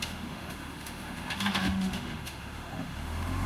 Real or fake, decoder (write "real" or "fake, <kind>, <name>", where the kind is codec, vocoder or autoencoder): fake, autoencoder, DAC-VAE